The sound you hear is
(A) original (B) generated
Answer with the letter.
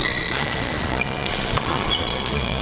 B